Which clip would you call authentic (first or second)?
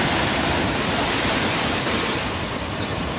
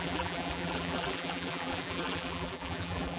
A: first